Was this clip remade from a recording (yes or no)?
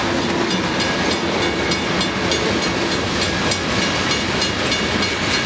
no